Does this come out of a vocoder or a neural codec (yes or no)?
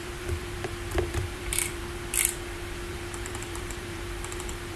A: yes